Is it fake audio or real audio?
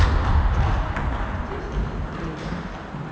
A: real